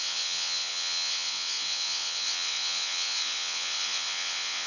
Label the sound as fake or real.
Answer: fake